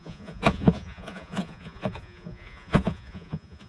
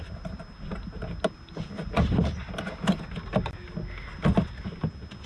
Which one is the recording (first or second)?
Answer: second